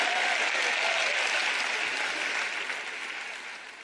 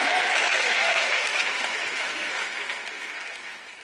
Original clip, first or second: first